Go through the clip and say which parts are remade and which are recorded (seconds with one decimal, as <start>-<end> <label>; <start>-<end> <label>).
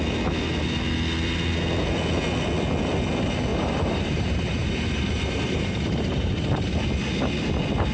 0.0-3.5 recorded; 3.5-6.7 remade; 6.7-7.9 recorded